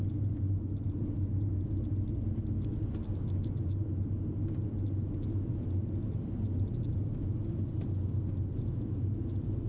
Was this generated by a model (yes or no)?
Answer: no